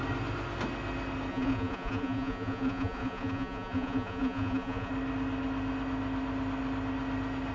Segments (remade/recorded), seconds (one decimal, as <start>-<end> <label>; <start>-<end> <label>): 0.0-1.3 recorded; 1.3-4.9 remade; 4.9-7.5 recorded